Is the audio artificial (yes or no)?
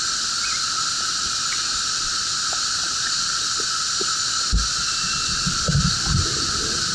no